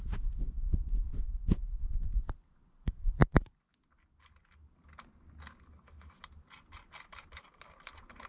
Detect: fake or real real